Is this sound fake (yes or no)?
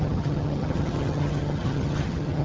yes